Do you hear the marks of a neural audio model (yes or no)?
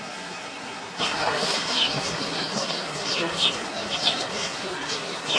yes